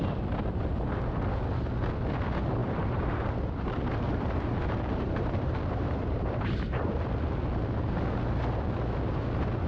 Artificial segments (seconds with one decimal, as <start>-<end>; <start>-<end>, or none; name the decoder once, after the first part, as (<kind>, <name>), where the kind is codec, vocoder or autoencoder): 2.6-7.1 (vocoder, BigVGAN v2)

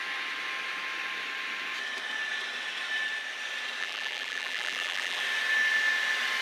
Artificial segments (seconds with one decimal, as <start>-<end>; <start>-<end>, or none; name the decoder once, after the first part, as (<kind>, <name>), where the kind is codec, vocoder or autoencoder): 3.8-5.2 (vocoder, BigVGAN v2)

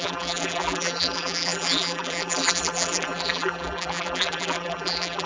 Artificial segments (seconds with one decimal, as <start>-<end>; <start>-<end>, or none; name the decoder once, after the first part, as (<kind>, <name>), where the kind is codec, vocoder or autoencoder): 0.0-5.3 (vocoder, BigVGAN v2)

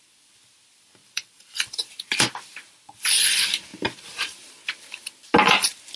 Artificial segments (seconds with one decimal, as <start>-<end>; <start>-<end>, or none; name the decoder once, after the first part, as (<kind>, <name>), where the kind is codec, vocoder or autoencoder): 1.0-1.9 (vocoder, BigVGAN v2)

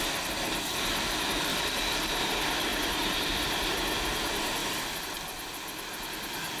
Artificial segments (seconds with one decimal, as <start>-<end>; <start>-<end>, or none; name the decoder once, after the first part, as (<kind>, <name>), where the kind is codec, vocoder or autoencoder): 1.5-2.1 (vocoder, BigVGAN v2); 2.7-3.9; 4.6-6.6

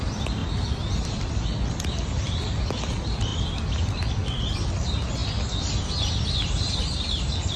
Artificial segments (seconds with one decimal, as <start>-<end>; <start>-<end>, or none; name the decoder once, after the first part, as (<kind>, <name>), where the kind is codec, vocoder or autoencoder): 0.0-0.4 (vocoder, BigVGAN v2); 1.0-3.3; 4.1-7.6

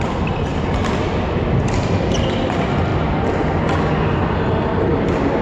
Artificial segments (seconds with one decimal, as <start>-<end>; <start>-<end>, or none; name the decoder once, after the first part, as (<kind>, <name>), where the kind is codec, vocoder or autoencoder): none